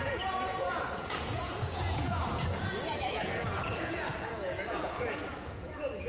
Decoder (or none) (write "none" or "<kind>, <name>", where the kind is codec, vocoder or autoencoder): vocoder, Vocos